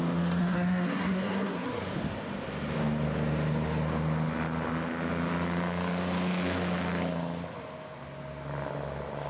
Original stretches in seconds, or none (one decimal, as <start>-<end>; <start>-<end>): 0.0-0.4; 1.8-9.3